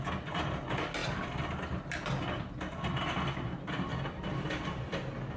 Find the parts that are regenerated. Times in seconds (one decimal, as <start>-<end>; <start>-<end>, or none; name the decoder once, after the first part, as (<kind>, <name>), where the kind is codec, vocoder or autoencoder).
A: 1.0-2.9 (vocoder, BigVGAN v2); 3.9-4.6